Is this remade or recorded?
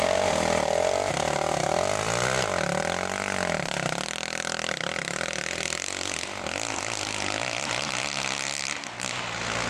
recorded